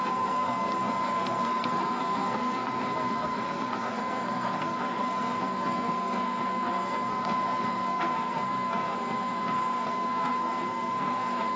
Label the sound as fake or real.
fake